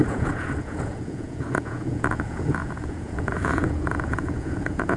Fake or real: fake